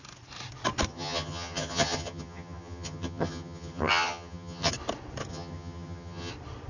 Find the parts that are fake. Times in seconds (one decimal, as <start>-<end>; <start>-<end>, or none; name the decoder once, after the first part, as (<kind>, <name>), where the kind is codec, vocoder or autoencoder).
0.9-4.7 (vocoder, HiFi-GAN); 5.3-6.3

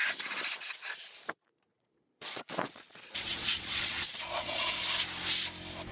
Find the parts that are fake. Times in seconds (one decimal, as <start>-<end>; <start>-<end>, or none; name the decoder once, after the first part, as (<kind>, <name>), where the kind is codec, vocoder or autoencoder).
1.7-4.8 (vocoder, Vocos)

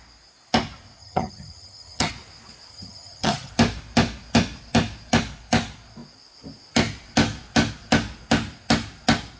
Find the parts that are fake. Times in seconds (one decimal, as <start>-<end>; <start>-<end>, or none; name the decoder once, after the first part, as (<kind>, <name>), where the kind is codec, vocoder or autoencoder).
1.0-2.1 (vocoder, HiFi-GAN); 2.7-3.5

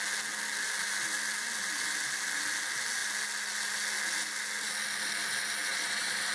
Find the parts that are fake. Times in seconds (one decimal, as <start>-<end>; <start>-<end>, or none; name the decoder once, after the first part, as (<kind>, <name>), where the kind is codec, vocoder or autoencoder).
5.7-6.3 (vocoder, Vocos)

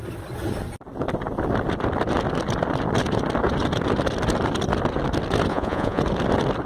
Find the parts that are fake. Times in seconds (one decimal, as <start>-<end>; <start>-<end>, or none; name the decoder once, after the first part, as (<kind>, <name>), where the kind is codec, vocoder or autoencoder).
5.5-6.0 (vocoder, Vocos)